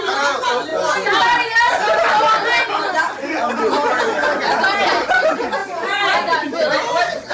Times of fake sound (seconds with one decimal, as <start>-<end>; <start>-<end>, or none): none